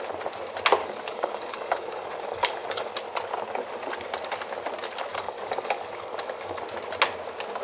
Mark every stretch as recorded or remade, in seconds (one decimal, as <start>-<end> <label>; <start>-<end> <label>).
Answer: 0.0-0.8 recorded; 0.8-2.9 remade; 2.9-5.1 recorded; 5.1-6.6 remade; 6.6-7.6 recorded